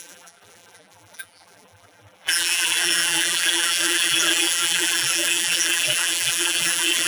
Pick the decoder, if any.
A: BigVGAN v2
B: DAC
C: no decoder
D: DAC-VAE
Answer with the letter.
A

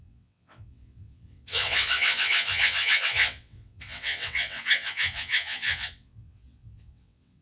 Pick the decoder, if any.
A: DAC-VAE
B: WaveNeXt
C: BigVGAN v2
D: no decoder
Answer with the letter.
B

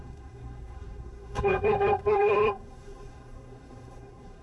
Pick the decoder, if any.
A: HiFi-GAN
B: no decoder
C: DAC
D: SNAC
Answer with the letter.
D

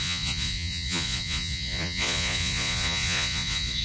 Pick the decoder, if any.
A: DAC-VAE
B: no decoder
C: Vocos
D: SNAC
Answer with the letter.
C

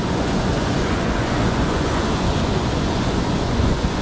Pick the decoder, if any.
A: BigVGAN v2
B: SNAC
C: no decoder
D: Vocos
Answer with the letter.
D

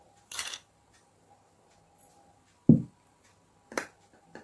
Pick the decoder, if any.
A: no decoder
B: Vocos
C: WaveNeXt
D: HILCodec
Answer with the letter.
A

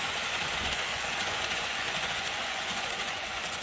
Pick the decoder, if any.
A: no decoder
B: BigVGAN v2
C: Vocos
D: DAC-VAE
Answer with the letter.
C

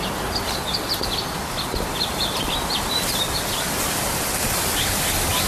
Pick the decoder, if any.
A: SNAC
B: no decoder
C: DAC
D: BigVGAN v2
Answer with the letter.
D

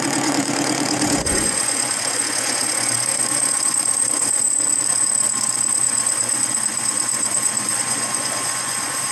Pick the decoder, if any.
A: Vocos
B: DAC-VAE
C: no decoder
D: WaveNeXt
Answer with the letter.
A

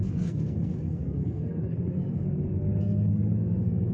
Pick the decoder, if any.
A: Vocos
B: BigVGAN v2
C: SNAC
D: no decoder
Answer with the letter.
C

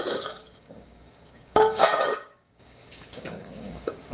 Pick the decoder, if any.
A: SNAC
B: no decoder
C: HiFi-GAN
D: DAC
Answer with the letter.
D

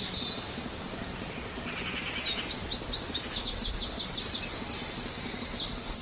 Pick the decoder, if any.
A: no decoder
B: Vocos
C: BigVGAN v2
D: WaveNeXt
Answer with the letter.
A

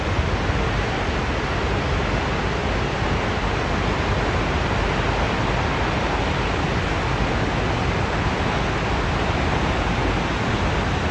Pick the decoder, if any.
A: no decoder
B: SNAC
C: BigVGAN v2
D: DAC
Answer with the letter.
A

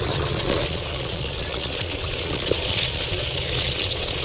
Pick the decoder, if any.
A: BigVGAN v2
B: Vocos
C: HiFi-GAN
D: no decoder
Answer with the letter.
B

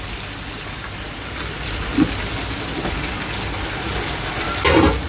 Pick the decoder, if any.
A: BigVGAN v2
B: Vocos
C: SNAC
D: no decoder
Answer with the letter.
D